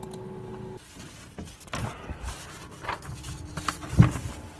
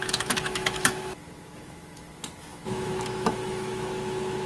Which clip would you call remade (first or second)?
second